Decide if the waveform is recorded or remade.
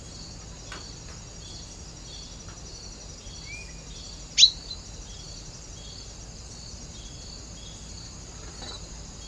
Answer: recorded